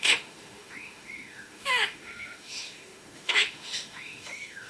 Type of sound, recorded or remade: remade